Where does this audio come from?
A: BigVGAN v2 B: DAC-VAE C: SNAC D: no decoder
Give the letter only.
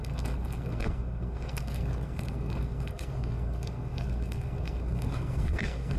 C